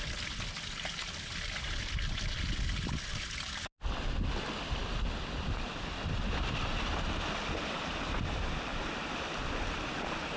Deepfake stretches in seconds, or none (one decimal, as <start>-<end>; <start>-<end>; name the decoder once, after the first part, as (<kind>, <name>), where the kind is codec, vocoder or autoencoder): none